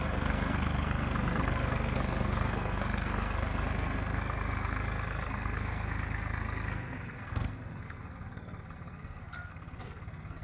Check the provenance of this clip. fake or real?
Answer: fake